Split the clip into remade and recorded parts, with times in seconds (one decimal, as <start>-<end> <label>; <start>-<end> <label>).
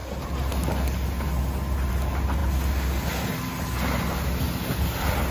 0.0-5.3 recorded